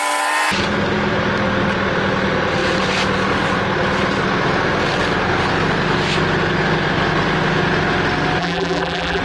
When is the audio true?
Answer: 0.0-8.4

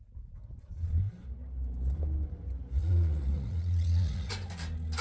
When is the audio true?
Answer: 0.0-2.8; 4.3-5.0

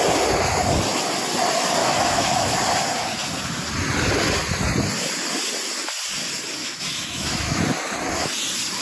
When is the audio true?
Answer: 0.0-1.8; 2.5-6.6; 7.6-8.8